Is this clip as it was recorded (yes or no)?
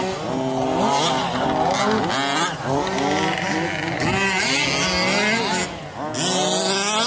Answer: yes